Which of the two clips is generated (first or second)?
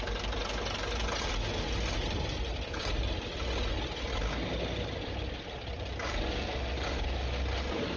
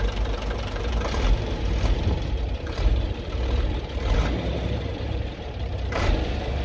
second